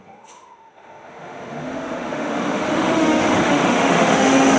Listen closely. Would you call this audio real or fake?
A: fake